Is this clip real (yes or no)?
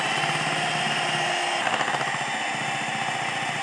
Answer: yes